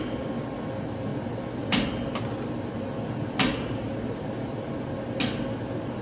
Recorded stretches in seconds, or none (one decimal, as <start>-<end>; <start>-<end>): 0.0-6.0